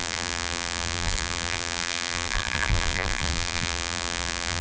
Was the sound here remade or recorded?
remade